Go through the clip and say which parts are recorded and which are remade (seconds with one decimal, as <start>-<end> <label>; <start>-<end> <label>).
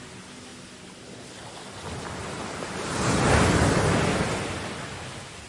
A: 0.0-5.5 recorded